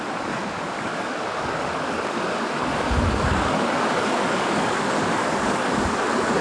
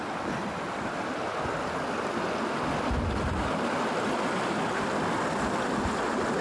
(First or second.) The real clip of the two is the second